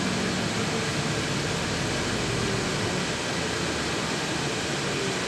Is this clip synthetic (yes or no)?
no